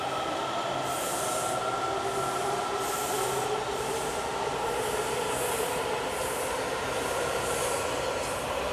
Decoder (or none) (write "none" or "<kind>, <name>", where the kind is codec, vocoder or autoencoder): none